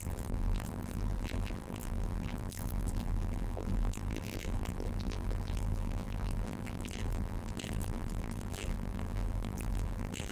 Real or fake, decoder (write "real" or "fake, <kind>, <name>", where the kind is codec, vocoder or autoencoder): fake, vocoder, BigVGAN v2